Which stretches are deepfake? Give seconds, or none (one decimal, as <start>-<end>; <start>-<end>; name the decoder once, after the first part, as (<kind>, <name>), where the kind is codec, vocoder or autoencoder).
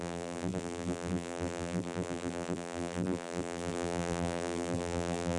0.0-5.4 (vocoder, BigVGAN v2)